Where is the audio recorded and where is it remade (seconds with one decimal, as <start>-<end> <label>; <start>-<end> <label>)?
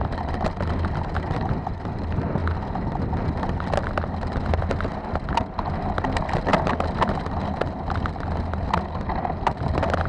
0.0-10.1 recorded